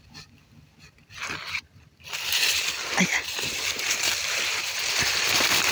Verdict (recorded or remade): remade